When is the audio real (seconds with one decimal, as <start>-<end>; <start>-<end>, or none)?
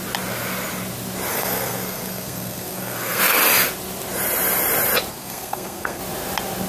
0.0-1.3; 3.2-5.1; 6.0-6.7